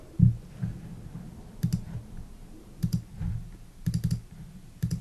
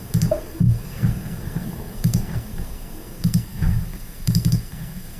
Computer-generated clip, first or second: second